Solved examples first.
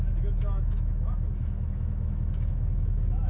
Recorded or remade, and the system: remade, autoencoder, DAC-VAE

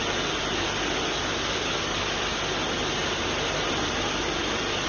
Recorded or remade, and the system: recorded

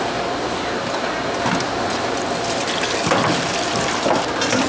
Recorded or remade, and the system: recorded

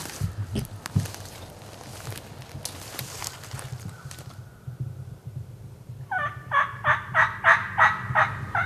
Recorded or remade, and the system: recorded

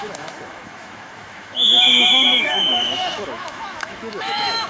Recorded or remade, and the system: remade, autoencoder, DAC-VAE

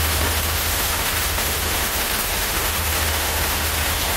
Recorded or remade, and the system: remade, autoencoder, DAC-VAE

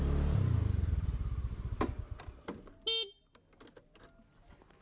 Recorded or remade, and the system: recorded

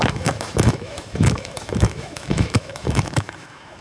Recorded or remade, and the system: remade, autoencoder, DAC-VAE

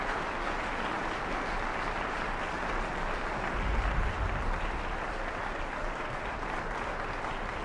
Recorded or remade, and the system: recorded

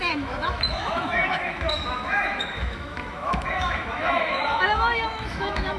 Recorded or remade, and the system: remade, autoencoder, DAC-VAE